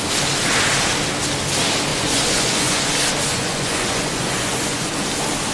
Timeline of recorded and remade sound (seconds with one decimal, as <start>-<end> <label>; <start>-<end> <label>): 0.0-1.9 recorded; 1.9-2.9 remade; 2.9-3.3 recorded; 3.3-4.9 remade; 4.9-5.5 recorded